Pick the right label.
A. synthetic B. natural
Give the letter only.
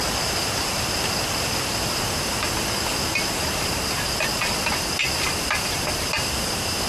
B